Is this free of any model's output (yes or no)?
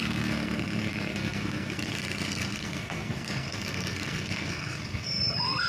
no